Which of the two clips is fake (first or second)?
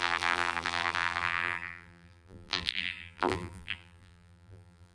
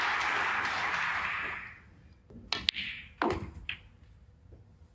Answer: first